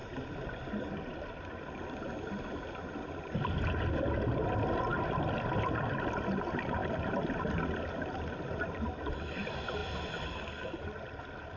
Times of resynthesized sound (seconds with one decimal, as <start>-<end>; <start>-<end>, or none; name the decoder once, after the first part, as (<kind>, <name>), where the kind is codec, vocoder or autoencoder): 6.8-7.5 (vocoder, BigVGAN v2)